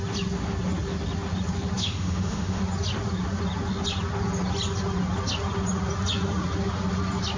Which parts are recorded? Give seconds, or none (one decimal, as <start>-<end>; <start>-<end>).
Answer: 0.0-1.8; 2.6-7.4